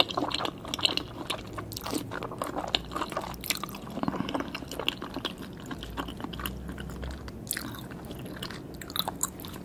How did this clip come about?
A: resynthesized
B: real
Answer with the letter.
B